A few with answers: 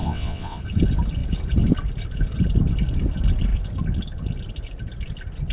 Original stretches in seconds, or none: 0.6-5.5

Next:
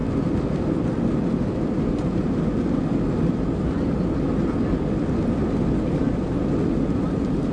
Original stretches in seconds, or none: 0.0-7.5